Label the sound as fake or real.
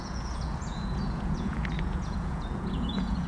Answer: fake